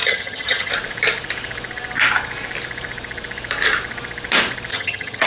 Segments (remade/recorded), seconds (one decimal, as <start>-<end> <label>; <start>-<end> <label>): 0.0-0.7 remade; 0.7-4.7 recorded; 4.7-5.3 remade